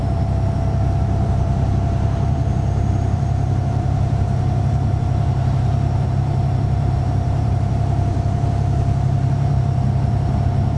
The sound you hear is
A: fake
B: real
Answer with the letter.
A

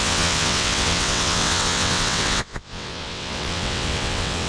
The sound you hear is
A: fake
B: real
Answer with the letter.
A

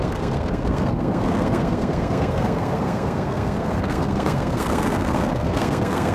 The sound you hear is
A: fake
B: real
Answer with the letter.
A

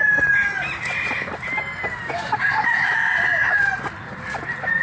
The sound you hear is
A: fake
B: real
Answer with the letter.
B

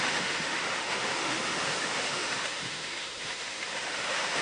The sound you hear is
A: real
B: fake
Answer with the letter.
B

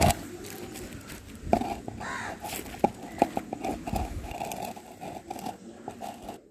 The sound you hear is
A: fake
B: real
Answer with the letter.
B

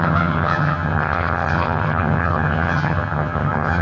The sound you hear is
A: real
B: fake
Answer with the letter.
B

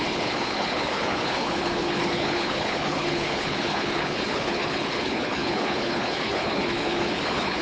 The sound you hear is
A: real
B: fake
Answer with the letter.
B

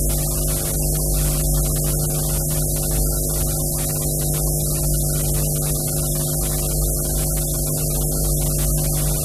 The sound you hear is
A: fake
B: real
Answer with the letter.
B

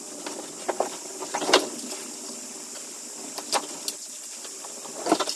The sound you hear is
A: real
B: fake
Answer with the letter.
A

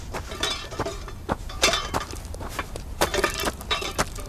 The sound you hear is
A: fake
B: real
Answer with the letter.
A